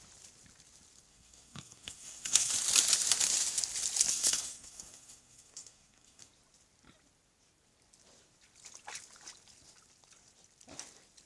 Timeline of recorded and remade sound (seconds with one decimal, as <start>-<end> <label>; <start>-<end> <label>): 0.0-1.1 recorded; 1.1-2.5 remade; 2.5-4.1 recorded; 4.1-6.3 remade; 6.3-11.3 recorded